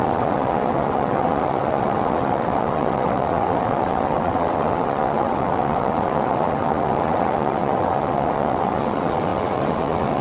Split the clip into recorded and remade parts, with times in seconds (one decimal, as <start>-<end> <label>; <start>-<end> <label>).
0.0-10.2 remade

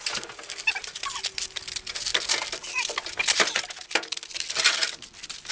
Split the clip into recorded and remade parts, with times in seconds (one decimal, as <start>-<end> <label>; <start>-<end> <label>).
0.0-5.5 recorded

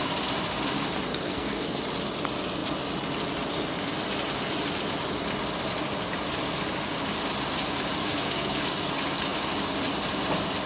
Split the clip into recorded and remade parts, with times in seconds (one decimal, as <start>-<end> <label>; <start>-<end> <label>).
0.0-1.1 recorded; 1.1-1.8 remade; 1.8-8.0 recorded; 8.0-8.6 remade; 8.6-10.7 recorded

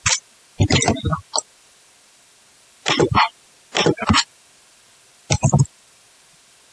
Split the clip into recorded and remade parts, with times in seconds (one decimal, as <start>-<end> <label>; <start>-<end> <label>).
0.0-6.7 recorded